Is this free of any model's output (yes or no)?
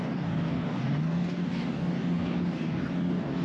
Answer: no